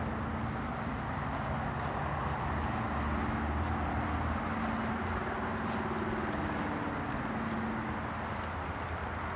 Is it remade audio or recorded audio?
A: recorded